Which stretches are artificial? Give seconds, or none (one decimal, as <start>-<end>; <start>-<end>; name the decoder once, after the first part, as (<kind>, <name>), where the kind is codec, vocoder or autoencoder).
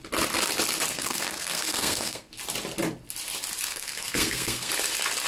0.9-2.3 (codec, SNAC); 3.7-4.7